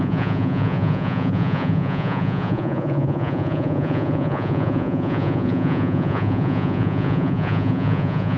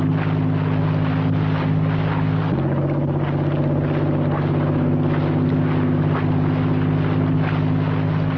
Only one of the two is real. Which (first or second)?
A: second